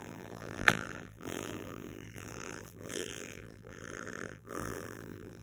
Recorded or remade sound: remade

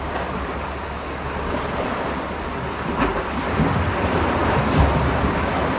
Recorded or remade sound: recorded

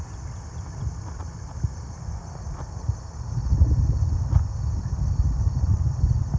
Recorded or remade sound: recorded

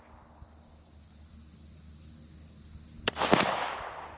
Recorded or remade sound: recorded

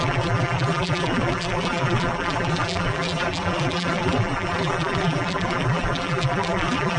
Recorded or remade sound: remade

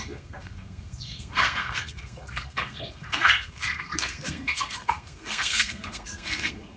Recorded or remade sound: remade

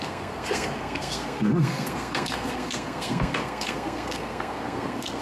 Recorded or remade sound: remade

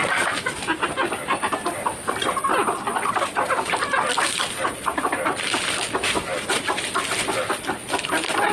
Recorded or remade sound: recorded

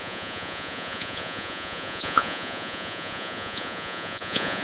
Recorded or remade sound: remade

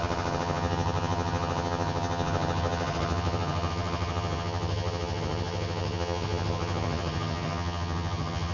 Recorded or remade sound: remade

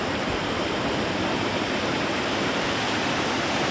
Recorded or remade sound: remade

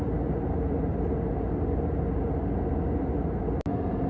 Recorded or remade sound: recorded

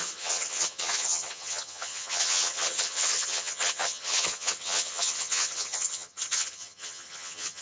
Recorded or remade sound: remade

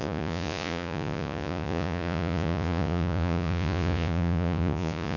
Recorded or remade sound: remade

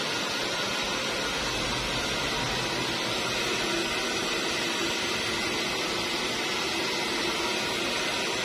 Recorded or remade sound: recorded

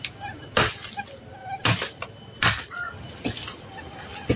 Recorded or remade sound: recorded